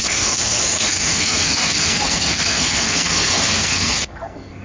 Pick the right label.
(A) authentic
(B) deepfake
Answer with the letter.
B